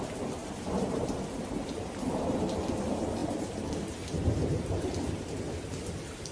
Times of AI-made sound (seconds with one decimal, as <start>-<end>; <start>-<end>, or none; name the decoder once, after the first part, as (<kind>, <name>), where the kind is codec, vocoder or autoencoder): 0.4-1.2 (vocoder, BigVGAN v2); 3.2-5.4